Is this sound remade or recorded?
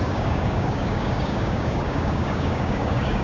remade